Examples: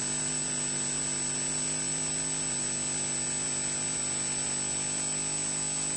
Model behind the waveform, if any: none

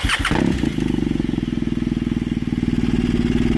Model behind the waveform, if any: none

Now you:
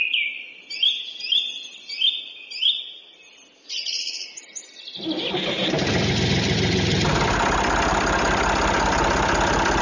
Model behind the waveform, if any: none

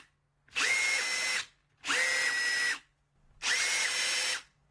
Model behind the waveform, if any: none